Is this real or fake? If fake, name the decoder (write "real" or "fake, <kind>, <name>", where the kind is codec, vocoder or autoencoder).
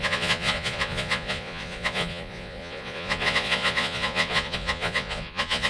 fake, vocoder, Vocos